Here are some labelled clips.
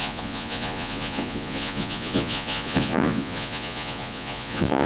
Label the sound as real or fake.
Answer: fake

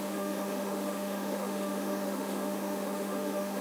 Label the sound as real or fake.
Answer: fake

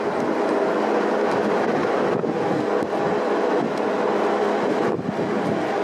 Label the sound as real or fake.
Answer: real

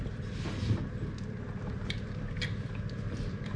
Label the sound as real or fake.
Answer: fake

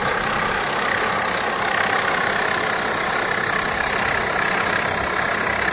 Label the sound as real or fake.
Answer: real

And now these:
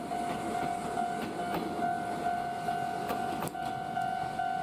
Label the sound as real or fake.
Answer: real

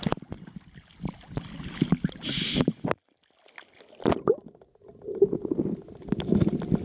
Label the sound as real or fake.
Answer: real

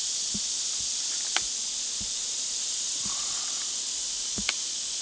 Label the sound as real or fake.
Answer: real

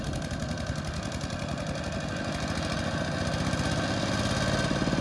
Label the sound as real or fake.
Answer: real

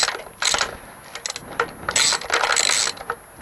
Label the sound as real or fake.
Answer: real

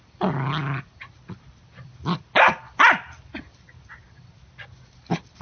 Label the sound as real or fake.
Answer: real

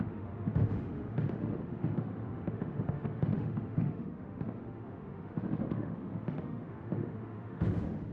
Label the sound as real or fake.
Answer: fake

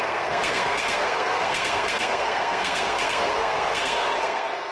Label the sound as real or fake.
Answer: fake